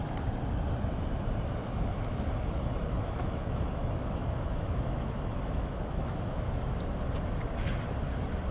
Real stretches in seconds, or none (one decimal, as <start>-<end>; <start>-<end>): 0.0-1.6; 6.7-8.5